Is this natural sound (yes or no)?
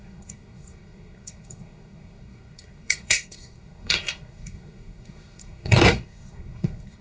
no